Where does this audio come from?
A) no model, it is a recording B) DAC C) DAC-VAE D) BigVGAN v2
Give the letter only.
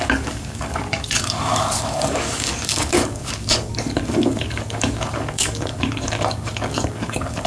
B